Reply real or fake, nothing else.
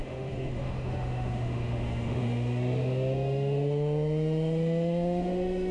fake